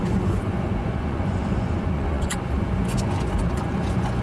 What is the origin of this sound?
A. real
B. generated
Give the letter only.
B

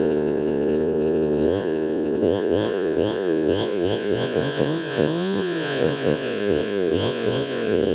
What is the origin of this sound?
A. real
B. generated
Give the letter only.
B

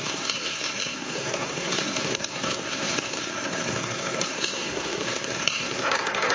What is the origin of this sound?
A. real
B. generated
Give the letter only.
B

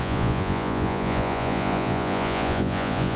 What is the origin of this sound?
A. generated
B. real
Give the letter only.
A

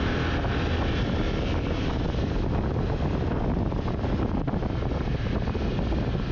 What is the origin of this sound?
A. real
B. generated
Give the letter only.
A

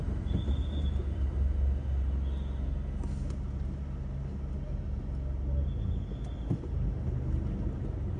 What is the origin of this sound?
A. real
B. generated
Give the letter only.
A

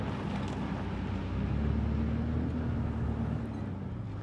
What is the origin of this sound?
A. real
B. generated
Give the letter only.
A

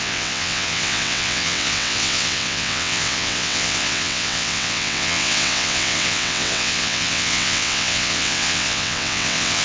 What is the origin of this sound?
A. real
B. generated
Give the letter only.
B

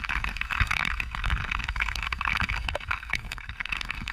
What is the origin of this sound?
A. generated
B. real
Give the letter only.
A